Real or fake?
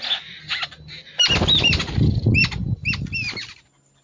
real